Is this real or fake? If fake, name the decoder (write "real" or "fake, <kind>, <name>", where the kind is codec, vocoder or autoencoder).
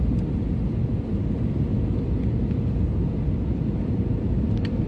real